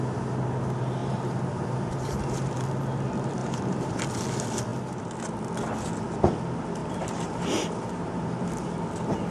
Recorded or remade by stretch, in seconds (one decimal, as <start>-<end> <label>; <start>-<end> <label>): 0.0-1.0 recorded; 1.0-2.6 remade; 2.6-3.4 recorded; 3.4-4.0 remade; 4.0-6.8 recorded; 6.8-8.5 remade; 8.5-9.3 recorded